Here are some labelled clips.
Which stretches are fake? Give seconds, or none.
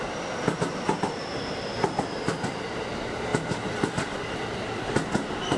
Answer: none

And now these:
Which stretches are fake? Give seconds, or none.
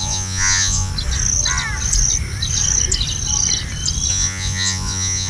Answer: 0.0-0.9 (vocoder, Vocos); 4.1-5.3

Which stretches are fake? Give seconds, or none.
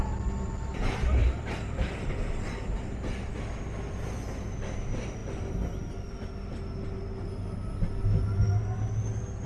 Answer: 1.2-2.8 (vocoder, BigVGAN v2)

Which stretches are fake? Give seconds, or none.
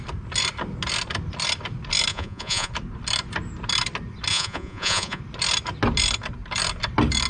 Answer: 2.1-2.7 (vocoder, Vocos); 4.3-5.2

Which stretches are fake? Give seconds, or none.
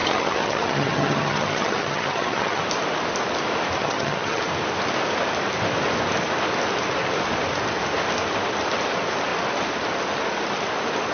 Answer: 0.0-2.6 (vocoder, HiFi-GAN); 3.8-4.4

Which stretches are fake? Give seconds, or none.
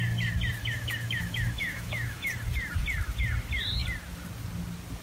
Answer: 0.6-2.3 (autoencoder, DAC-VAE)